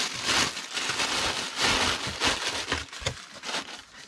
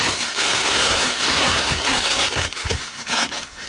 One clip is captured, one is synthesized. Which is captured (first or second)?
first